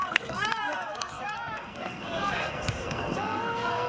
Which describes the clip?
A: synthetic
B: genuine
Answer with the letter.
A